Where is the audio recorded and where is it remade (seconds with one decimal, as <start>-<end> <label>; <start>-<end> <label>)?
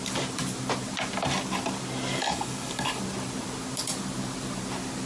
0.0-2.1 recorded; 2.1-3.0 remade; 3.0-5.1 recorded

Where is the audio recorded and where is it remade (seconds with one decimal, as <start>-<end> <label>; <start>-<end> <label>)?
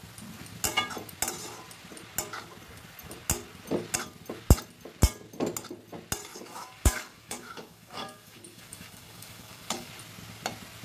0.0-6.3 recorded; 6.3-9.9 remade; 9.9-10.8 recorded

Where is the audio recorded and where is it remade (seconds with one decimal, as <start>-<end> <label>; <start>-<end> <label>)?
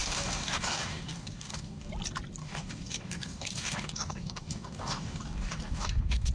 0.0-1.9 remade; 1.9-2.4 recorded; 2.4-6.3 remade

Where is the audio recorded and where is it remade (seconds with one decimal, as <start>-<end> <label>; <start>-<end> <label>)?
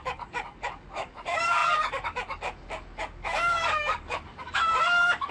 0.0-5.3 remade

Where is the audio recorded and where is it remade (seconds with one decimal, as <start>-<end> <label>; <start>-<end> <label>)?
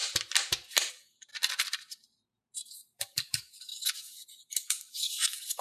0.0-0.9 recorded; 0.9-1.3 remade; 1.3-2.7 recorded; 2.7-5.6 remade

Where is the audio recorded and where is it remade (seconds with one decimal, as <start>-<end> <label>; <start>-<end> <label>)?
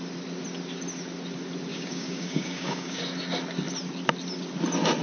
0.0-1.7 recorded; 1.7-3.0 remade; 3.0-5.0 recorded